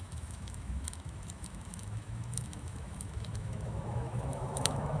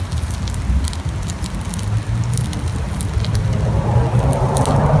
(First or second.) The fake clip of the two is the first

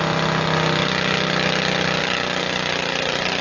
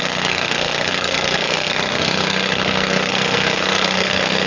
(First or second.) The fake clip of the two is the second